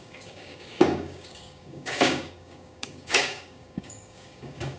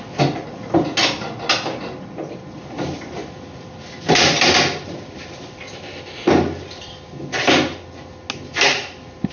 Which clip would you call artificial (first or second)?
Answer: first